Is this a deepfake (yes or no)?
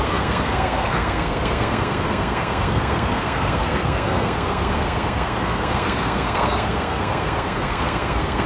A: yes